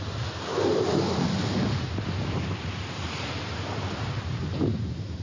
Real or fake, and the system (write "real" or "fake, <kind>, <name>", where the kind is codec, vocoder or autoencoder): fake, vocoder, BigVGAN v2